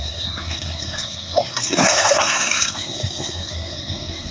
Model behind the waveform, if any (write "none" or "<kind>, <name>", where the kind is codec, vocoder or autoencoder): codec, SNAC